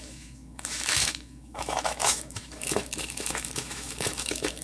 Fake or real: fake